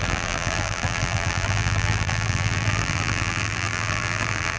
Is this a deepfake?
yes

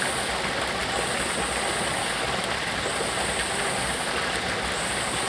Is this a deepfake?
no